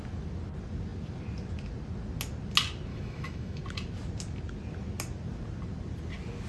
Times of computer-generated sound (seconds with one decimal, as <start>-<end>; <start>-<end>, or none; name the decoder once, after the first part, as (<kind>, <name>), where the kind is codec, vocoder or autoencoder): 2.9-3.6 (autoencoder, DAC-VAE)